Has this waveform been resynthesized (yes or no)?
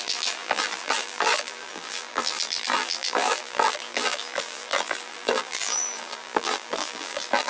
yes